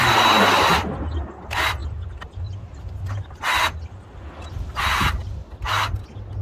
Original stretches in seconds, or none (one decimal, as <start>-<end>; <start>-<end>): 0.0-6.4

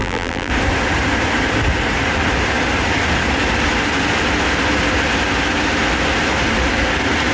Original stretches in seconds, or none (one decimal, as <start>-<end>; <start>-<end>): 0.5-7.3

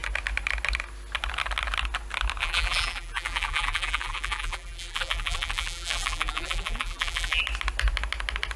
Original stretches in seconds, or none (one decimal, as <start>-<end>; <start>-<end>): 0.0-2.4; 7.4-8.6

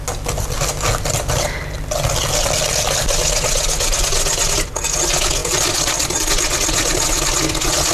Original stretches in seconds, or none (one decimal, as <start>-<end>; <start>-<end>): 0.0-5.4; 6.3-7.9

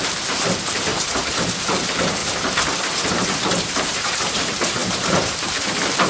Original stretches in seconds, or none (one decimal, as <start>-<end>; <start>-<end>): 2.2-3.5